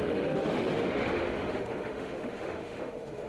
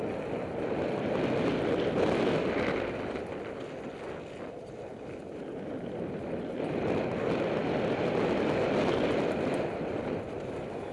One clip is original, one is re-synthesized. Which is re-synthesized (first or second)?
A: first